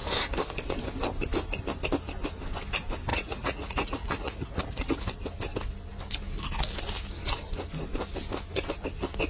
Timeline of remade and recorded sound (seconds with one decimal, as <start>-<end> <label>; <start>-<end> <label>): 0.0-3.1 recorded; 3.1-5.1 remade; 5.1-9.3 recorded